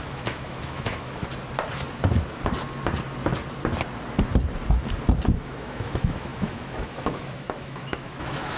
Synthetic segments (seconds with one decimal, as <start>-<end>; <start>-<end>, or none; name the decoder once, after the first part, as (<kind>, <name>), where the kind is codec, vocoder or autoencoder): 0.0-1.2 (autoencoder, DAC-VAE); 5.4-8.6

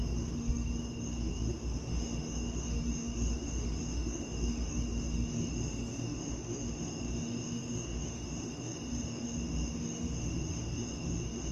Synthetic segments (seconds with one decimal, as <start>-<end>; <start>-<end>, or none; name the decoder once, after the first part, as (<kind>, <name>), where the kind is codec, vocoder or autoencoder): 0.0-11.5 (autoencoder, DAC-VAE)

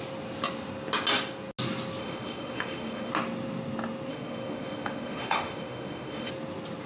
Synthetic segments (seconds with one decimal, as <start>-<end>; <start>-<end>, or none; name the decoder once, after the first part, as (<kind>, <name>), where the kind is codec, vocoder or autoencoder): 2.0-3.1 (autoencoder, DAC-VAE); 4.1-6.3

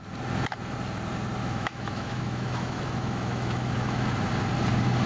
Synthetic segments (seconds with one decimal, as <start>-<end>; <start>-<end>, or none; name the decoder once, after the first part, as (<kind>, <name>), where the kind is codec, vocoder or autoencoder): 1.4-4.1 (autoencoder, DAC-VAE)

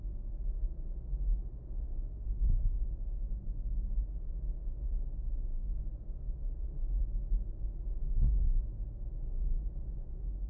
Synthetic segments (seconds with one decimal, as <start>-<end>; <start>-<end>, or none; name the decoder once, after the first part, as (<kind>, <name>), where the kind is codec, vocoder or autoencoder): 1.3-3.3 (autoencoder, DAC-VAE); 4.6-5.8; 6.4-7.0